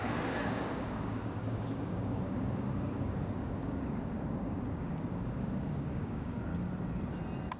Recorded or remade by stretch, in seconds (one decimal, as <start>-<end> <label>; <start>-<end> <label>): 0.0-6.5 remade; 6.5-7.6 recorded